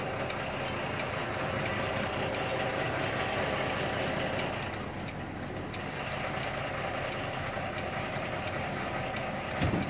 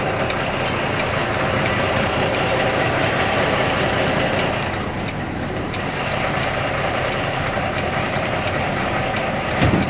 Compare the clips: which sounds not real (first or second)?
second